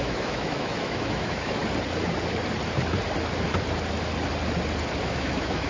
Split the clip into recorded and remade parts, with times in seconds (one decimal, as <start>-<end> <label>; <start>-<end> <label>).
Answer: 0.0-1.6 remade; 1.6-5.0 recorded; 5.0-5.7 remade